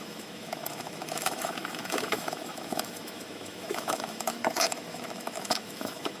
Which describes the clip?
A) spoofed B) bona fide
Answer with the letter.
A